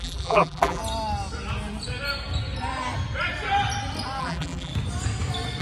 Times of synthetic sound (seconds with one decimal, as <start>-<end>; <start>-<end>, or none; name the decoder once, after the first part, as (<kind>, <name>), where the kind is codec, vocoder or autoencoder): 0.0-0.8 (vocoder, BigVGAN v2); 4.2-4.7